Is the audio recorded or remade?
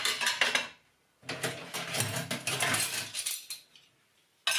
recorded